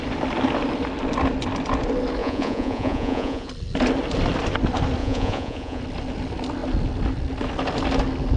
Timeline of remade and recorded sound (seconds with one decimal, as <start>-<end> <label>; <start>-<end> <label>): 0.0-2.2 recorded; 2.2-3.5 remade; 3.5-5.0 recorded; 5.0-5.8 remade; 5.8-8.4 recorded